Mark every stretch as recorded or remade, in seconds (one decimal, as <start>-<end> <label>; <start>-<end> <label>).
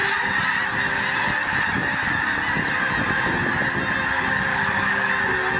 0.0-4.5 recorded; 4.5-5.1 remade; 5.1-5.6 recorded